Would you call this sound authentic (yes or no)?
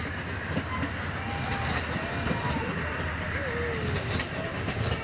yes